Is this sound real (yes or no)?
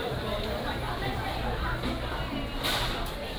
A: no